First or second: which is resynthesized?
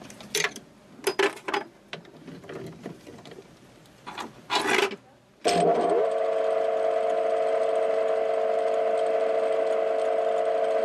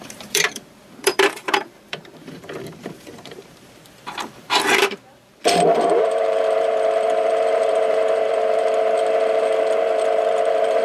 second